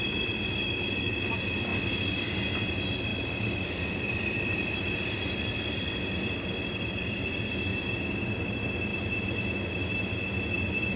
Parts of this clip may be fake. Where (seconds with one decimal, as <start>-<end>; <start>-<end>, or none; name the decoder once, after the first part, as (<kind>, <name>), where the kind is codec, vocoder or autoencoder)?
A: 1.7-2.7 (vocoder, BigVGAN v2); 3.1-7.2